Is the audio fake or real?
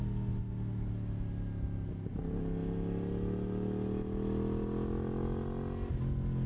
real